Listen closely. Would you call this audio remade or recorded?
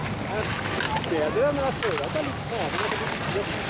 recorded